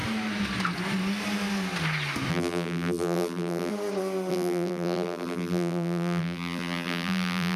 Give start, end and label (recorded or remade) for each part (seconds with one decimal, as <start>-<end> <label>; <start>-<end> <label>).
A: 0.0-2.3 recorded; 2.3-3.7 remade; 3.7-4.3 recorded; 4.3-7.6 remade